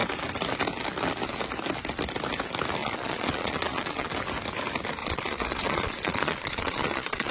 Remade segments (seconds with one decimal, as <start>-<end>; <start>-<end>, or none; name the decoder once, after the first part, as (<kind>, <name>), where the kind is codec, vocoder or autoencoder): 2.8-4.1 (vocoder, Vocos); 5.0-7.3